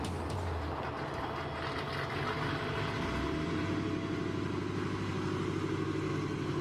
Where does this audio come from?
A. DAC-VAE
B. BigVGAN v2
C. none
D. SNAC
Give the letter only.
C